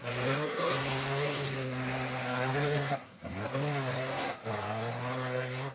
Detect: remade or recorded remade